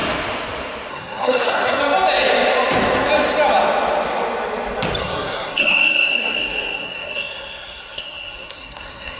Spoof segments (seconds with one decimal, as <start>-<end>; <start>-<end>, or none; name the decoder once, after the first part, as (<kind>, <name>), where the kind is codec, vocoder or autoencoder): 0.9-1.8 (codec, SNAC); 5.0-9.2